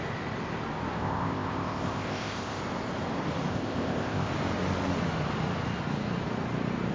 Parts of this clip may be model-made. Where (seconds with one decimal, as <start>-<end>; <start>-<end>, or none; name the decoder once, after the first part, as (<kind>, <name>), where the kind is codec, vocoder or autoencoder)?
1.0-2.6 (codec, ZipCodec); 3.5-4.3